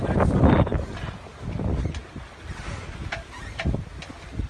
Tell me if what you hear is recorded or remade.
recorded